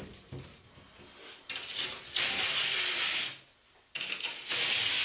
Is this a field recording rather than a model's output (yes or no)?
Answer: yes